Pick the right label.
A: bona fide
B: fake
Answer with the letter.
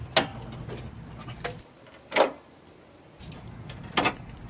A